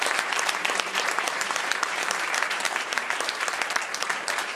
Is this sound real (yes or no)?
no